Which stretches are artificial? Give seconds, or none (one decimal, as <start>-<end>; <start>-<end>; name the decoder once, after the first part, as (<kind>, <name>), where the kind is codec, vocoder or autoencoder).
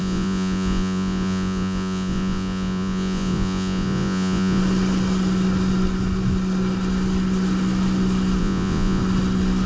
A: 0.0-4.6 (vocoder, Vocos); 8.4-9.0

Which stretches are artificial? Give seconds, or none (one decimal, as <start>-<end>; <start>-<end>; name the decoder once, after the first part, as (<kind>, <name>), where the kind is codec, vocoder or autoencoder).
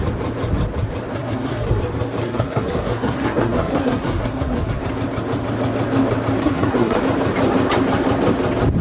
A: 1.1-1.8 (codec, SNAC); 2.2-4.7; 6.4-7.0